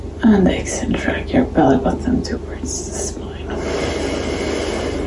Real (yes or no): yes